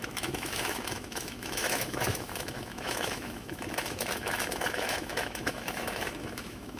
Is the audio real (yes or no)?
no